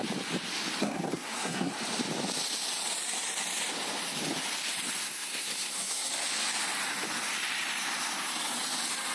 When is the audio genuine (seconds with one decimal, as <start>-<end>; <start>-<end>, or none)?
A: 0.0-0.8; 1.7-5.0; 6.1-9.1